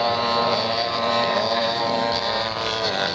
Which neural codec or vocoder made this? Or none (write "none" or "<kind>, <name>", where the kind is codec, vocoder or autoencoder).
vocoder, BigVGAN v2